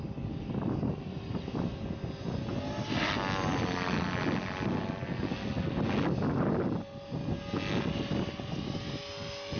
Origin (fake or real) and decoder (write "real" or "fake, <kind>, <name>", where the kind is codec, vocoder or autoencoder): real